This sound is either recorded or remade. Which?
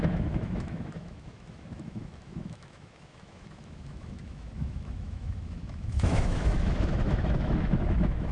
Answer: remade